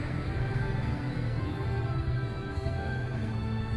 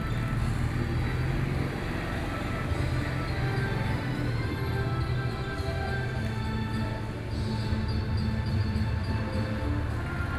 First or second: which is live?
second